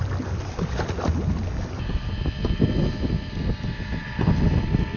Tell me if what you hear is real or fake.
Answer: real